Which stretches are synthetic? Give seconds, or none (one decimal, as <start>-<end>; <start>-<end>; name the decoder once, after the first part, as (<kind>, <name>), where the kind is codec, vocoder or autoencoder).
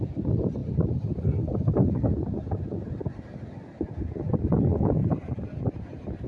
none